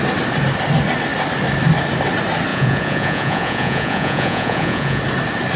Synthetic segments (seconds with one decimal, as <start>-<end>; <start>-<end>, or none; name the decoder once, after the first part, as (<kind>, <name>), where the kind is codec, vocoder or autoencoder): 2.5-5.0 (vocoder, Vocos)